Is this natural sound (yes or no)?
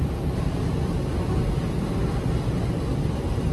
yes